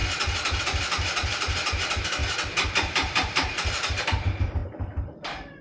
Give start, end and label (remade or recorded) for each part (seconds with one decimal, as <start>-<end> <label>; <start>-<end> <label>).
0.0-0.6 recorded; 0.6-2.2 remade; 2.2-2.7 recorded; 2.7-4.6 remade; 4.6-5.6 recorded